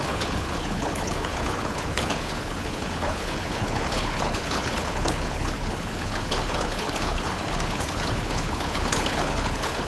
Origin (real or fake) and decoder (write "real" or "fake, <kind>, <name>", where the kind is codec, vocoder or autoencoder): fake, codec, HILCodec